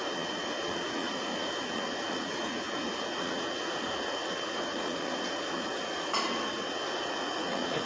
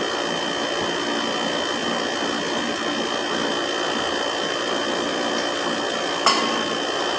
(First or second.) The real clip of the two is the second